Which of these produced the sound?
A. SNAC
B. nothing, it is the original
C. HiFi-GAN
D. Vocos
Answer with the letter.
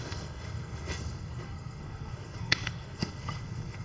A